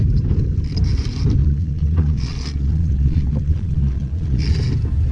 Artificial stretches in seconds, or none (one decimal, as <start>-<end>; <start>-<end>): 1.4-4.5